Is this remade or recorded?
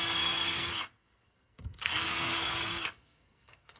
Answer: remade